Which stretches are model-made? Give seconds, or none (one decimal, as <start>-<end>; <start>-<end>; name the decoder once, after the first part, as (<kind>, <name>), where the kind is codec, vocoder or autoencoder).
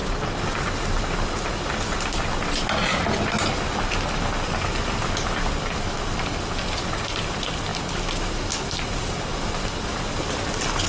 none